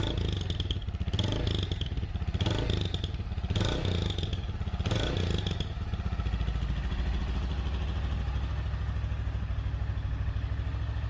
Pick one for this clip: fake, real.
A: real